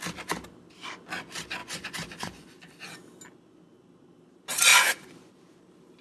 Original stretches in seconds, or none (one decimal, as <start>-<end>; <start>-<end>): 0.0-1.6; 2.5-4.7; 5.3-6.0